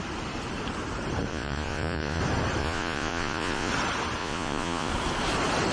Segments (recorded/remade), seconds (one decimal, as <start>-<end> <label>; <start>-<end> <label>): 0.0-1.3 recorded; 1.3-2.2 remade; 2.2-2.6 recorded; 2.6-3.7 remade; 3.7-4.2 recorded; 4.2-4.9 remade; 4.9-5.7 recorded